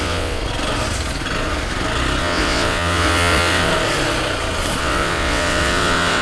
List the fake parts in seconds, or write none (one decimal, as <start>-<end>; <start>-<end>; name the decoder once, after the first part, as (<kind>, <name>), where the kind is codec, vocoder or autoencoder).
0.0-0.4 (vocoder, WaveNeXt); 2.2-3.7; 4.8-6.2